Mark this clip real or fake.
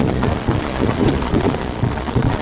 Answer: fake